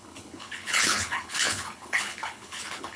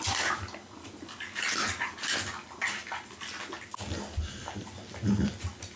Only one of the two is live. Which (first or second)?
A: second